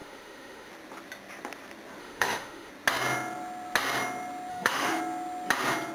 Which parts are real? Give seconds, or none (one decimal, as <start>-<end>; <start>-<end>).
0.7-2.0; 2.7-4.5; 5.0-5.9